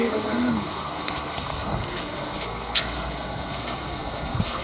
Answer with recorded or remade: remade